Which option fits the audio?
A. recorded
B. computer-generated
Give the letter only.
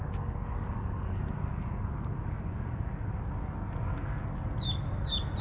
A